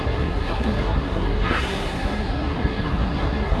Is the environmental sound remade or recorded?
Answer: remade